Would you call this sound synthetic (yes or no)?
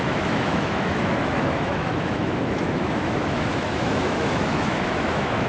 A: yes